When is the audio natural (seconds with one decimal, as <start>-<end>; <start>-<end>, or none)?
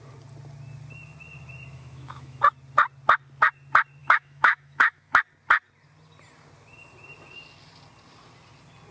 0.0-1.7; 2.4-4.0; 5.1-8.9